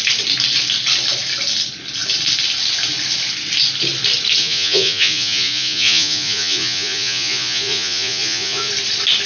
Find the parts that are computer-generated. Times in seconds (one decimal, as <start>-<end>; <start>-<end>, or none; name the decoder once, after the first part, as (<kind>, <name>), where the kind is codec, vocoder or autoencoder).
4.4-8.7 (vocoder, Vocos)